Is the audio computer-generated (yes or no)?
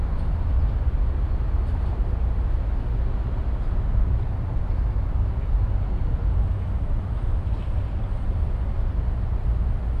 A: no